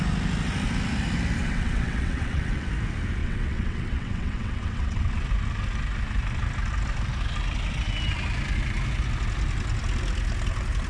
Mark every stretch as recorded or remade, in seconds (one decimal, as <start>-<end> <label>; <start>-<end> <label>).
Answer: 0.0-1.4 recorded; 1.4-2.7 remade; 2.7-3.2 recorded; 3.2-5.3 remade; 5.3-10.9 recorded